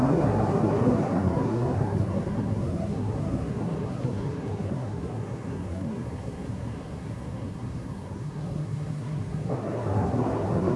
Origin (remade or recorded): remade